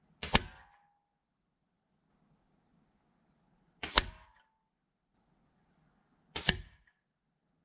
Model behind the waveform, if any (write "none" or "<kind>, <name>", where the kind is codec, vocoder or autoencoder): none